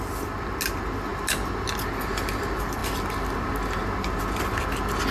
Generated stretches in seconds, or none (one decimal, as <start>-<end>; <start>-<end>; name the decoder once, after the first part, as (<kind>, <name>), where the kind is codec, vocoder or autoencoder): none